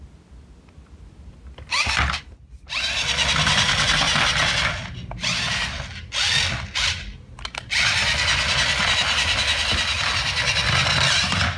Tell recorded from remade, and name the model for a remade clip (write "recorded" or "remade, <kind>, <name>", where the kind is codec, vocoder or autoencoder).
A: recorded